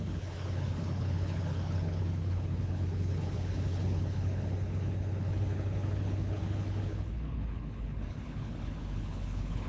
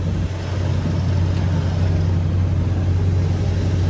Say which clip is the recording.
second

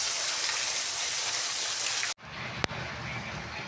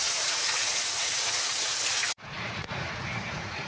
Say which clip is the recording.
first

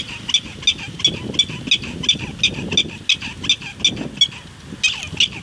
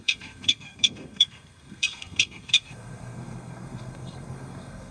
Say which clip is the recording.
first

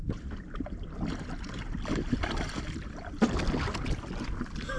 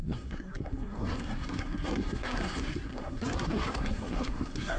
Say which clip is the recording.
first